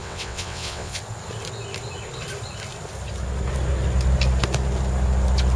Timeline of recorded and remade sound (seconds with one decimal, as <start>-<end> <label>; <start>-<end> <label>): 0.0-1.0 remade; 1.0-5.6 recorded